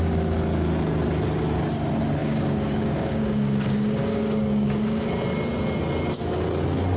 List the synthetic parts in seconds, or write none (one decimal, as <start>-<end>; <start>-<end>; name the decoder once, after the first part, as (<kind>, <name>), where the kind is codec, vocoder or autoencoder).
2.2-5.0 (codec, DAC)